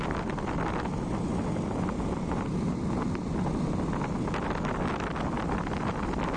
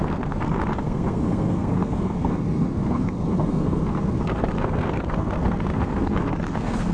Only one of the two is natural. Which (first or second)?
first